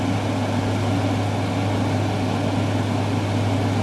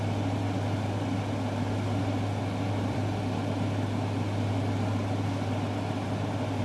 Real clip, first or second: first